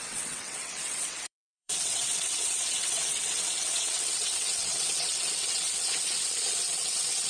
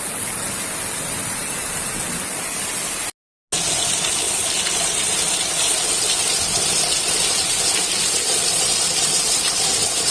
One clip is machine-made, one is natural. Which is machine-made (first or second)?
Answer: first